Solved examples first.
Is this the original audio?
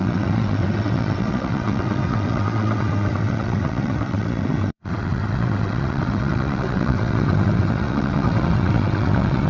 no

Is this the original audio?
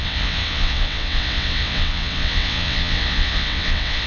no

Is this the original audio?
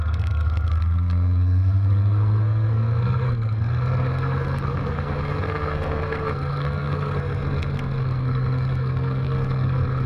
no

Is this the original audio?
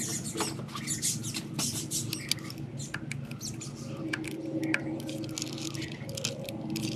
yes